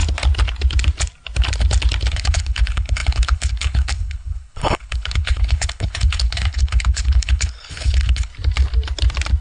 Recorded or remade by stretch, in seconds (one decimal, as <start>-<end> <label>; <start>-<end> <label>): 0.0-2.1 recorded; 2.1-8.3 remade; 8.3-9.4 recorded